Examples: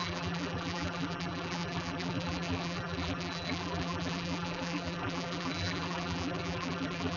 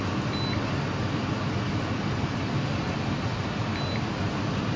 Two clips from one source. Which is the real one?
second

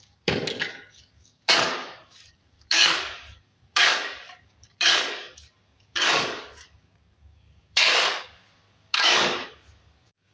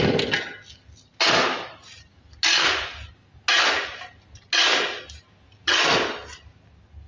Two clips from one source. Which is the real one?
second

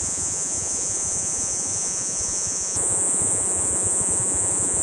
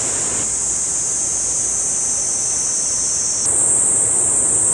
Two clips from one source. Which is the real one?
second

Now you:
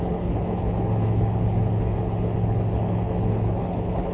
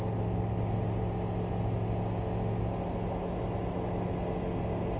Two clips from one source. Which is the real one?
second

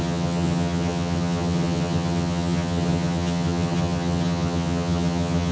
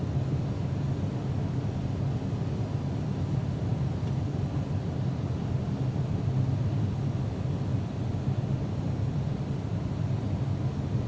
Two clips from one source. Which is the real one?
second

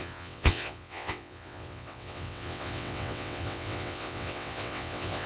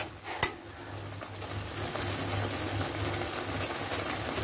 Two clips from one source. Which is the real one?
second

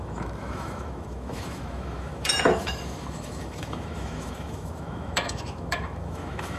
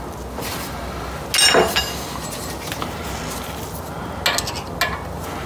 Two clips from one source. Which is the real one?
second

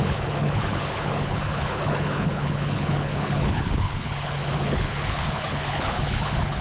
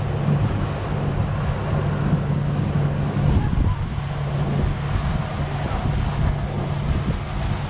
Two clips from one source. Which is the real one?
second